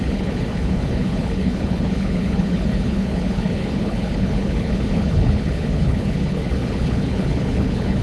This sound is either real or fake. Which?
fake